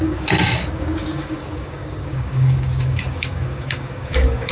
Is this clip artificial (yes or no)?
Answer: yes